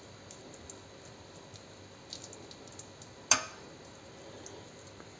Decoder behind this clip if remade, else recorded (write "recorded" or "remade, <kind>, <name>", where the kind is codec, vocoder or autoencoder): recorded